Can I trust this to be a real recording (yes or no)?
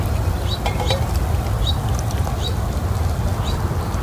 yes